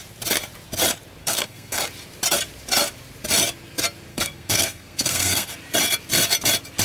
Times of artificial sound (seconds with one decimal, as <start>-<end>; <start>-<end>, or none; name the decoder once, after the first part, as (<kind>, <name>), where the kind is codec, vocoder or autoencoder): 1.2-1.8 (codec, SNAC); 4.1-5.5